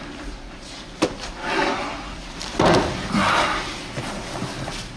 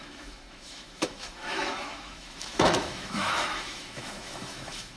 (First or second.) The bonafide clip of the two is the first